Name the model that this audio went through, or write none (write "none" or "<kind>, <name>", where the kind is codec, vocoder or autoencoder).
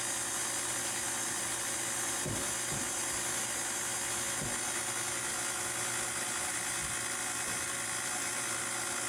none